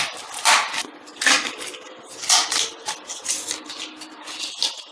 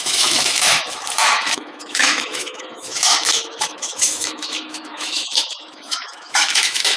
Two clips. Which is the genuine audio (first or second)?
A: first